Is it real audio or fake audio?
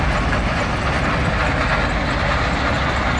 real